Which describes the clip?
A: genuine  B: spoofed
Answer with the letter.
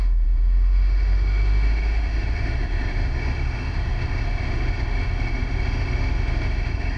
B